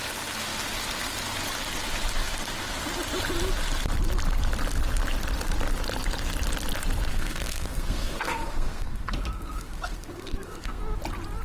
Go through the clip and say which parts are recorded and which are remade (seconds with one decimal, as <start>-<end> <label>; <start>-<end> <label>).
0.0-7.1 recorded; 7.1-10.8 remade; 10.8-11.4 recorded